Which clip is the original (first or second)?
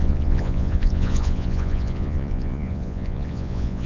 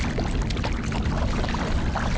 second